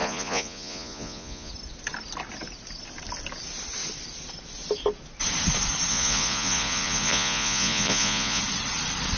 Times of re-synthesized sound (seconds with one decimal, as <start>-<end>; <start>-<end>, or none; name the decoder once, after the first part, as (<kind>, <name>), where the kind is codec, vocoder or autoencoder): 0.0-1.5 (vocoder, Vocos); 5.9-8.4